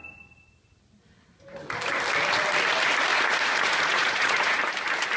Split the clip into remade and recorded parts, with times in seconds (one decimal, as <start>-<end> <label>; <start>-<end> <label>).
0.0-3.1 recorded; 3.1-4.6 remade; 4.6-5.2 recorded